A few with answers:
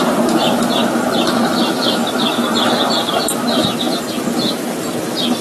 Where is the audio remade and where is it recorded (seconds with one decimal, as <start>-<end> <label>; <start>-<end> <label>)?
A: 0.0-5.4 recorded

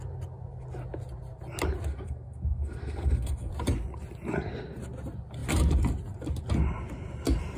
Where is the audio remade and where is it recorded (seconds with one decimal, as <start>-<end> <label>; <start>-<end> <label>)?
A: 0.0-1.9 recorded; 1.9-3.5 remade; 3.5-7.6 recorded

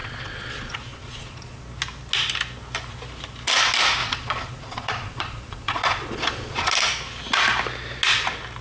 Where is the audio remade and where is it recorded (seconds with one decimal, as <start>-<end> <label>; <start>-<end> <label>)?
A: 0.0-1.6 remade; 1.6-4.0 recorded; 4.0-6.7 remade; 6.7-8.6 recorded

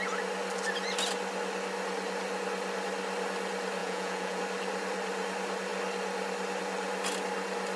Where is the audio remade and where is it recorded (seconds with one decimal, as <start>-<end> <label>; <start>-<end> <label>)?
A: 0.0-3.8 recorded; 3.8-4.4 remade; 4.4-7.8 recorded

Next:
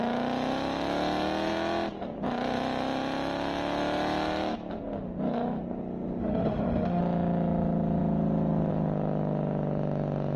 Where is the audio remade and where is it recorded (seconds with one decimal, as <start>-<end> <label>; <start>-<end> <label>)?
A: 0.0-6.2 recorded; 6.2-7.0 remade; 7.0-10.4 recorded

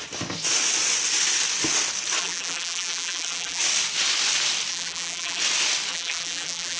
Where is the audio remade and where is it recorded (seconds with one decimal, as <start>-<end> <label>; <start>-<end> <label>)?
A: 0.0-2.2 recorded; 2.2-3.6 remade; 3.6-4.7 recorded; 4.7-5.4 remade; 5.4-5.9 recorded; 5.9-6.8 remade

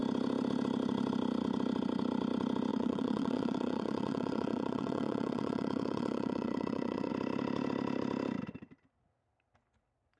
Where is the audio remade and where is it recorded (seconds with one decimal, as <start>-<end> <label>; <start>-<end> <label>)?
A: 0.0-2.7 recorded; 2.7-7.1 remade; 7.1-10.2 recorded